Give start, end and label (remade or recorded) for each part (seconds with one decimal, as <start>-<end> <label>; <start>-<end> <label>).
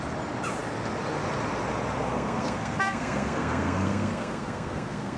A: 0.0-2.0 recorded; 2.0-5.2 remade